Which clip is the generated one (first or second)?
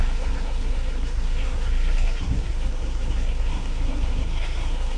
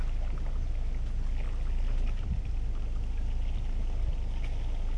first